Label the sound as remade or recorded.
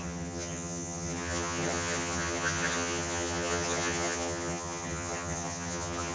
remade